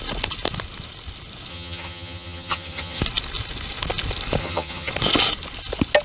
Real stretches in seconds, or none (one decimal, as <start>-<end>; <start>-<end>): 0.0-1.5; 3.0-4.4; 4.9-6.0